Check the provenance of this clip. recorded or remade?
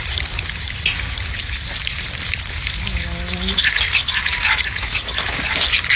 recorded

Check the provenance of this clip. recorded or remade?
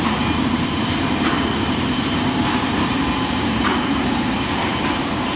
remade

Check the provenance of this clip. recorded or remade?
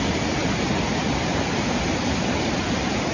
recorded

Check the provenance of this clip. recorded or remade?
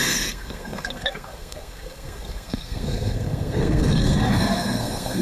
remade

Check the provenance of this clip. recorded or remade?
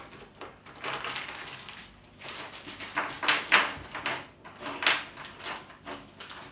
recorded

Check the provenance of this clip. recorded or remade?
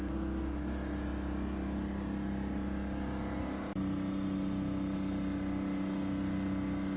recorded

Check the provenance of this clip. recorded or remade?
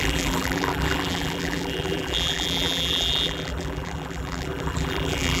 remade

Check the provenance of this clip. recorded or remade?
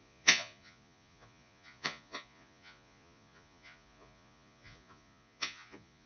remade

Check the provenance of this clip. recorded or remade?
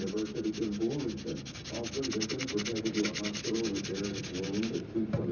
recorded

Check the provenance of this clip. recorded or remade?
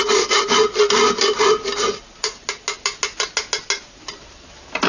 recorded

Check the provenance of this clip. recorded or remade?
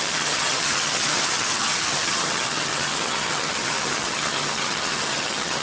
remade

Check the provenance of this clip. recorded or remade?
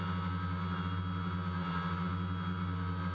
recorded